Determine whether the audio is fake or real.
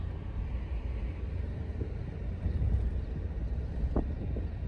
real